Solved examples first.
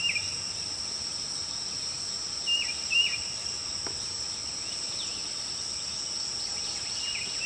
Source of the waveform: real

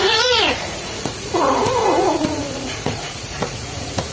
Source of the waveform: fake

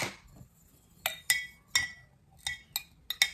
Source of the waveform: real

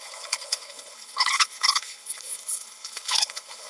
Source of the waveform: fake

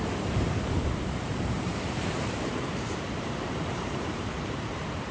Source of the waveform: fake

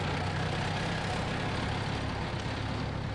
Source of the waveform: real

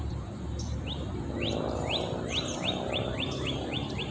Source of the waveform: fake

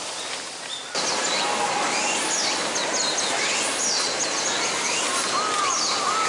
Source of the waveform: real